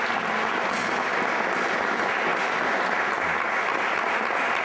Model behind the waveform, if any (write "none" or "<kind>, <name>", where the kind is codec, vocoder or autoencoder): none